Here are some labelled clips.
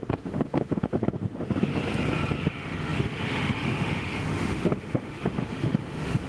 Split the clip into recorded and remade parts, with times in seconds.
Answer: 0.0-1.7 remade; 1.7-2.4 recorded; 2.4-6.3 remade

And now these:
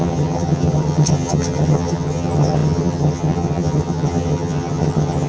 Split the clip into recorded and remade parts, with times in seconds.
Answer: 0.0-5.3 remade

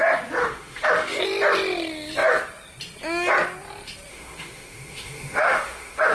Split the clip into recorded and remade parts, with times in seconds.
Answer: 0.0-0.4 recorded; 0.4-1.2 remade; 1.2-4.1 recorded; 4.1-6.1 remade

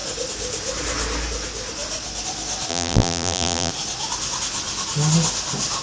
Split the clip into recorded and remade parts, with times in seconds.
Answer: 0.0-2.7 recorded; 2.7-3.7 remade; 3.7-5.8 recorded

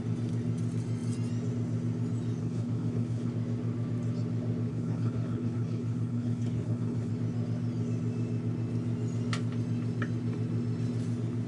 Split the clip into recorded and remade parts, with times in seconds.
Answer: 0.0-2.4 recorded; 2.4-3.3 remade; 3.3-4.7 recorded; 4.7-7.1 remade; 7.1-11.5 recorded